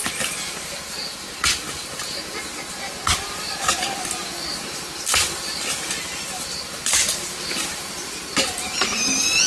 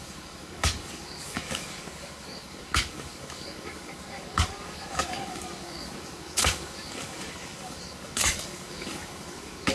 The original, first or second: first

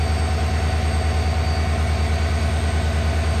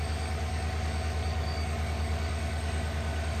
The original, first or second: first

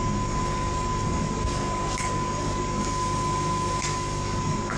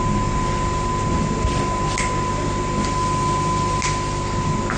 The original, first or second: second